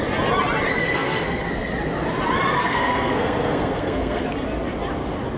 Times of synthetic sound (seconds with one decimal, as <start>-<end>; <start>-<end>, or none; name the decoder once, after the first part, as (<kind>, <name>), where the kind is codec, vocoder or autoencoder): 0.8-1.5 (codec, SNAC); 2.6-4.2